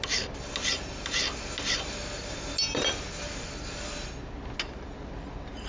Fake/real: real